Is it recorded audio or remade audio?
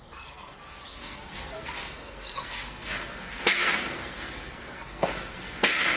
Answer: remade